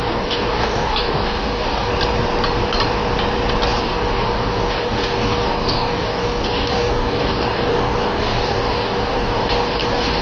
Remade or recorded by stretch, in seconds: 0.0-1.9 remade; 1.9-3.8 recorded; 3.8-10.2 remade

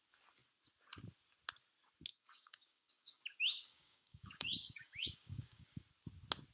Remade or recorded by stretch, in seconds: 0.0-2.1 recorded; 2.1-3.2 remade; 3.2-3.7 recorded; 3.7-5.8 remade; 5.8-6.5 recorded

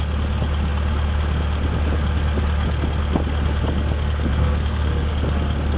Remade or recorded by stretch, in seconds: 0.0-4.3 recorded; 4.3-5.1 remade; 5.1-5.8 recorded

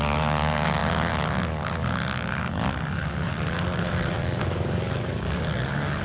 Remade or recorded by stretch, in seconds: 0.0-6.0 remade

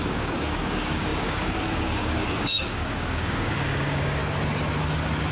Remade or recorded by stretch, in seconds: 0.0-4.2 remade; 4.2-5.3 recorded

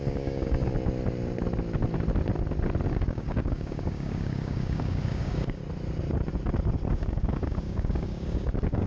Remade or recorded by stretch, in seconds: 0.0-0.7 remade; 0.7-2.9 recorded; 2.9-5.6 remade; 5.6-6.9 recorded; 6.9-8.9 remade

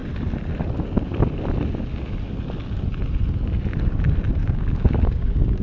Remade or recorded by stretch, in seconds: 0.0-4.4 recorded; 4.4-5.6 remade

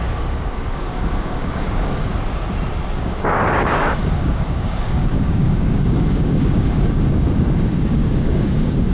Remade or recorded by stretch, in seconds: 0.0-2.1 remade; 2.1-3.0 recorded; 3.0-8.9 remade